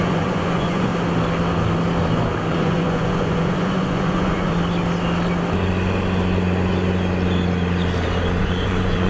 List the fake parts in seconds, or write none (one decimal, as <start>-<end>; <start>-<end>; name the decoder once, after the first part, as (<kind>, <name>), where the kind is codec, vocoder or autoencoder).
0.0-0.9 (vocoder, Vocos); 2.5-4.5; 8.4-9.1